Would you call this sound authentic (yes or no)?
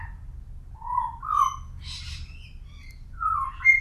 yes